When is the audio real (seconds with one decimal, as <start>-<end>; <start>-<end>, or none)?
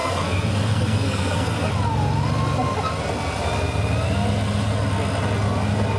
1.7-6.0